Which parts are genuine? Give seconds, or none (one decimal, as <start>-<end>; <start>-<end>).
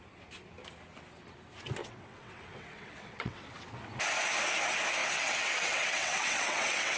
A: 0.0-1.8; 3.6-5.0